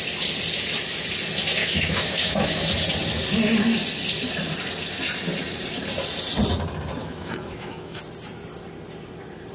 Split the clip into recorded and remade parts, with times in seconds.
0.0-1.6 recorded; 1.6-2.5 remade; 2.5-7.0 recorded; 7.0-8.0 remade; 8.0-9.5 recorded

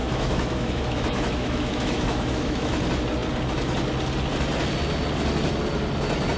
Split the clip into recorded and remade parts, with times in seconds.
0.0-2.8 remade; 2.8-6.4 recorded

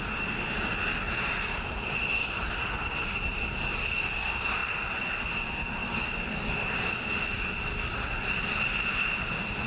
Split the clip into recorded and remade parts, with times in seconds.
0.0-9.7 recorded

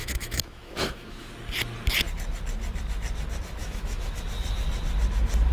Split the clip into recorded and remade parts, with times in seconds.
0.0-1.3 remade; 1.3-3.6 recorded; 3.6-4.2 remade; 4.2-5.5 recorded

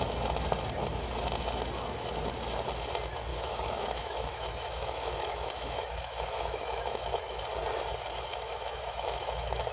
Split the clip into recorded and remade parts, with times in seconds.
0.0-3.3 recorded; 3.3-7.4 remade; 7.4-8.3 recorded; 8.3-9.7 remade

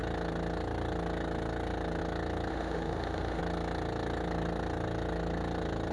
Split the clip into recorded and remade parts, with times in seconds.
0.0-2.5 recorded; 2.5-3.4 remade; 3.4-5.9 recorded